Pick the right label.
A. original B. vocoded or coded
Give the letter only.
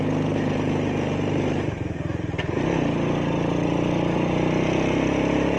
A